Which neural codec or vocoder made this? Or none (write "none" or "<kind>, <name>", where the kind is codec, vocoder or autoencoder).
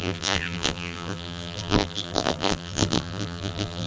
vocoder, BigVGAN v2